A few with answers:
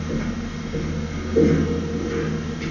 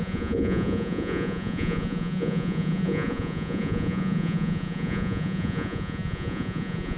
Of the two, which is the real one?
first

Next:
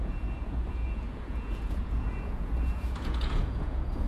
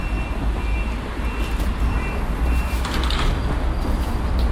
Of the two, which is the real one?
second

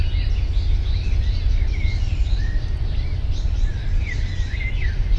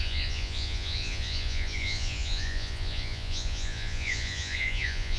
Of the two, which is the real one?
first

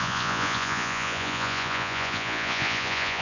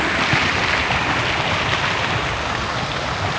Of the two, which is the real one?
second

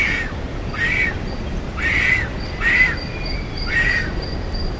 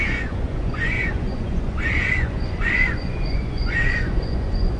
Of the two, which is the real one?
first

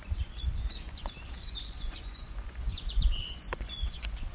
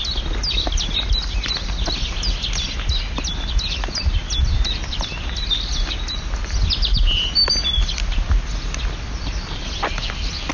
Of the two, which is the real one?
second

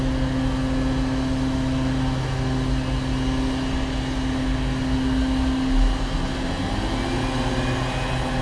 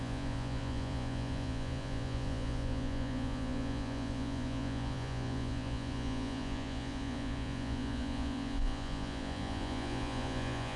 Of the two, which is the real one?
first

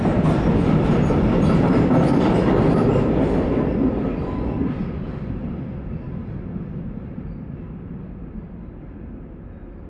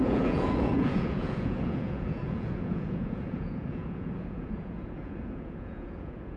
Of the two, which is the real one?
first